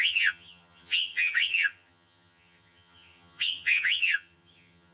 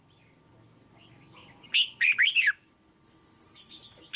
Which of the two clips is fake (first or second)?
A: first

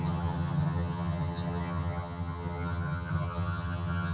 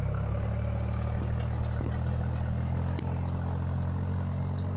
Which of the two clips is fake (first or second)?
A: first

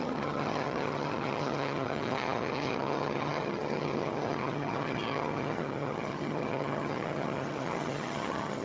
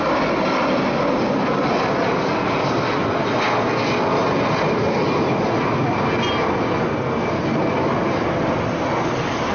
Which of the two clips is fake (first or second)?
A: first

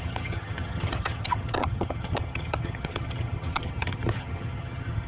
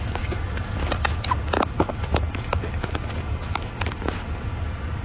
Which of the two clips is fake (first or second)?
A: first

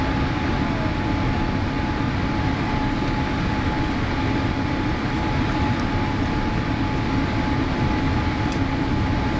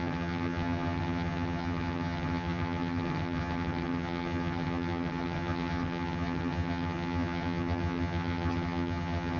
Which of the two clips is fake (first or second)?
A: second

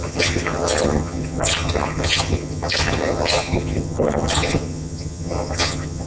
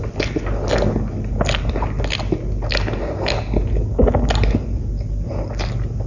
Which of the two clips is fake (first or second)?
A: first